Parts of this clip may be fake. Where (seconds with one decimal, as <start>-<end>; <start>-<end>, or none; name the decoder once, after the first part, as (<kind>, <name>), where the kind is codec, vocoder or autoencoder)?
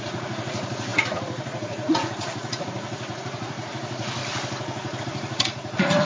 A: 0.0-4.2 (vocoder, Vocos); 5.0-6.1